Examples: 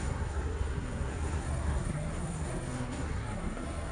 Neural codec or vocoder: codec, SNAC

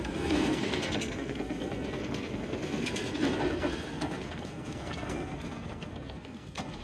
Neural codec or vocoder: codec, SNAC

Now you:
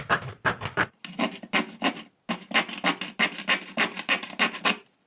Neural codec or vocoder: none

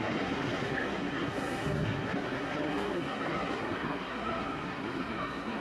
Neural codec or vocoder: codec, SNAC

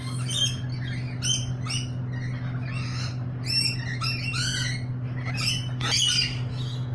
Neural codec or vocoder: none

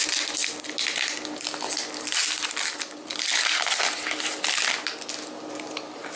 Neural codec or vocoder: none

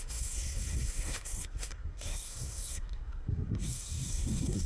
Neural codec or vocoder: codec, SNAC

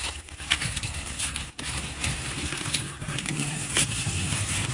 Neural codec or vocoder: codec, SNAC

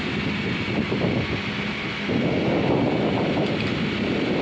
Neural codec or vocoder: none